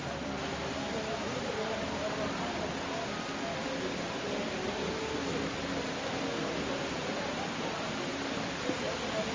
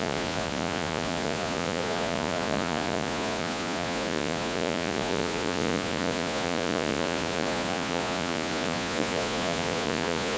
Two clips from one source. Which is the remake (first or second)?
second